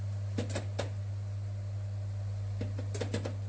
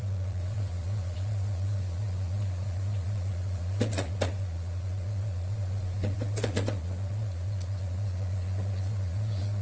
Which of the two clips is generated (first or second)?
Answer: second